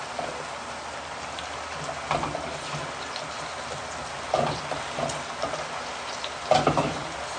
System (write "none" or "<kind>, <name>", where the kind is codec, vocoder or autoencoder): none